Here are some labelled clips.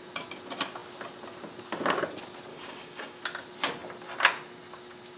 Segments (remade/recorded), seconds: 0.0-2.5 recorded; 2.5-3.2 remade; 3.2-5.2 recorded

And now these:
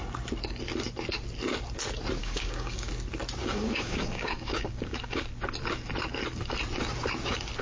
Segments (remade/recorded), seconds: 0.0-2.2 recorded; 2.2-2.9 remade; 2.9-3.4 recorded; 3.4-5.2 remade; 5.2-7.6 recorded

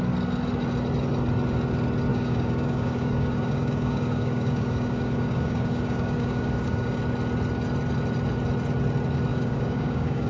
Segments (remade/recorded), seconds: 0.0-2.1 recorded; 2.1-7.0 remade; 7.0-9.3 recorded; 9.3-10.3 remade